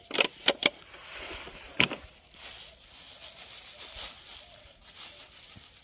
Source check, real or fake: real